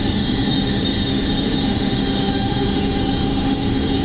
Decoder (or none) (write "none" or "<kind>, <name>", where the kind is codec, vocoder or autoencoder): autoencoder, DAC-VAE